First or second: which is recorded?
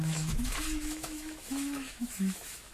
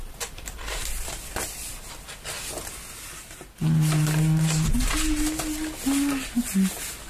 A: second